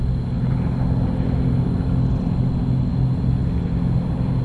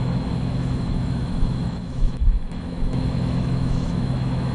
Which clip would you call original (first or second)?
first